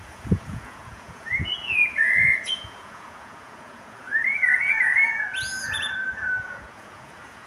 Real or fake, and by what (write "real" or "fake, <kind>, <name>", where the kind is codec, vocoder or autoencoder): fake, vocoder, Vocos